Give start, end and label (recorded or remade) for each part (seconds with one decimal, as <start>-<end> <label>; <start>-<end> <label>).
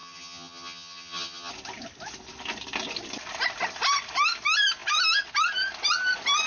0.0-1.5 remade; 1.5-6.5 recorded